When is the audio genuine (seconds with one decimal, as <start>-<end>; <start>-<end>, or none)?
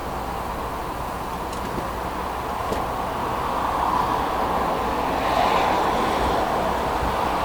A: 0.0-1.7; 2.6-4.3